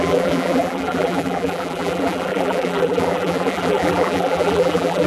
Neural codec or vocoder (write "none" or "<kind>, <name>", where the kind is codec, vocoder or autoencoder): vocoder, BigVGAN v2